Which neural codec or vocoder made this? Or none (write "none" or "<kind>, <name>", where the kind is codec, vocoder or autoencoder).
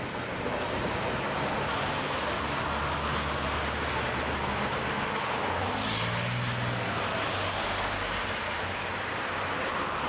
none